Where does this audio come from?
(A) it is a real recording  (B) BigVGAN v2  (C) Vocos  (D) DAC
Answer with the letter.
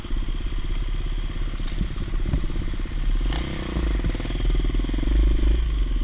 A